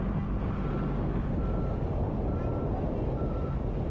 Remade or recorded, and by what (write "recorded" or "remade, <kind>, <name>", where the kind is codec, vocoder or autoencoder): recorded